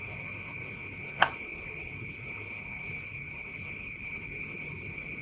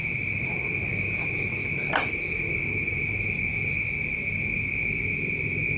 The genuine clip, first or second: second